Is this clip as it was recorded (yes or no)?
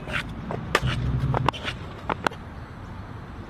yes